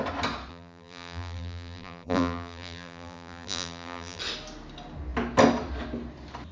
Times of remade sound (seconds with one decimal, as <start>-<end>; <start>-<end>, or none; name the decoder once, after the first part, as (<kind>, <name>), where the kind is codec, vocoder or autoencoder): 0.5-4.2 (vocoder, BigVGAN v2)